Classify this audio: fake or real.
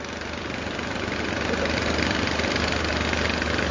real